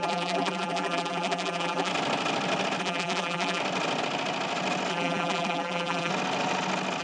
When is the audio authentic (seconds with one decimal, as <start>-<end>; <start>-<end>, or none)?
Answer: 1.9-2.8; 3.6-4.9; 6.1-7.0